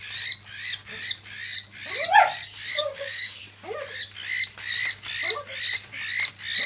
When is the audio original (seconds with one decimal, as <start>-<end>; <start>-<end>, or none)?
0.0-2.7; 3.4-6.7